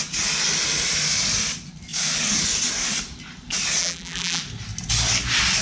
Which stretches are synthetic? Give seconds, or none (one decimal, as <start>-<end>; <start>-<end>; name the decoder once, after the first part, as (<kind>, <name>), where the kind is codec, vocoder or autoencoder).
3.8-4.4 (vocoder, BigVGAN v2)

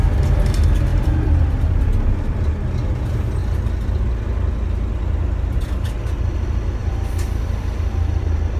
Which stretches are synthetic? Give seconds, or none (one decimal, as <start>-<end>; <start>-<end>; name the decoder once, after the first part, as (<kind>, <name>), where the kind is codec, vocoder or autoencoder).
0.9-2.4 (vocoder, BigVGAN v2)

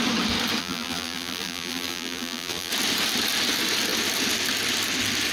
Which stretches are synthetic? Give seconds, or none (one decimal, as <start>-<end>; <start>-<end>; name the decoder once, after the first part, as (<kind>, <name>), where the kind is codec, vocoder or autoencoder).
0.6-2.7 (vocoder, BigVGAN v2)